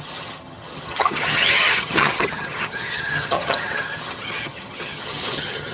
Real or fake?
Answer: fake